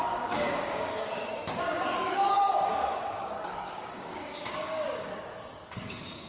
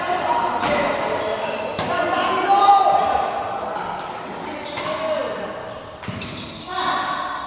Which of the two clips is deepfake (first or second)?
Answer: first